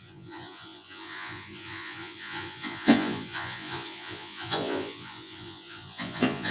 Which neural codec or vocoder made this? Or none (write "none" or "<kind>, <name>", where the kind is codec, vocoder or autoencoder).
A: vocoder, Vocos